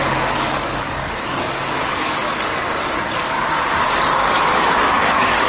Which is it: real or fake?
fake